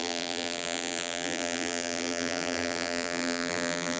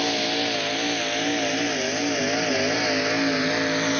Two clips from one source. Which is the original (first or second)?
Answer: second